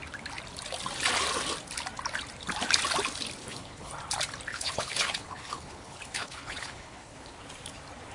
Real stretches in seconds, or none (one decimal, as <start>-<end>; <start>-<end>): 0.0-3.4; 3.9-4.5; 7.4-8.1